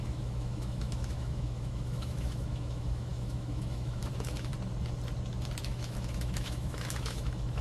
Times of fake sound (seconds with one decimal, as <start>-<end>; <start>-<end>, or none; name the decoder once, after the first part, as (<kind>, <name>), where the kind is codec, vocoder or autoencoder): 0.0-4.5 (autoencoder, DAC-VAE); 5.6-7.6